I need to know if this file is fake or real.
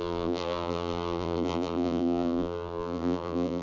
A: fake